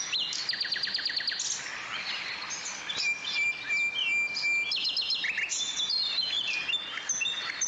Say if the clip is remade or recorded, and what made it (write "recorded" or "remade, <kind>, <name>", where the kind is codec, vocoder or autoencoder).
recorded